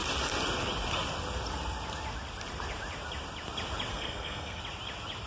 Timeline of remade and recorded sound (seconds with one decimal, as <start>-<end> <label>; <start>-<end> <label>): 0.0-3.9 recorded; 3.9-4.6 remade; 4.6-5.3 recorded